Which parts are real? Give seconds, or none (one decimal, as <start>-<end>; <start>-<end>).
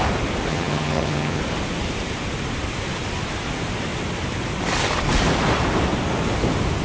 0.0-0.5; 1.4-6.8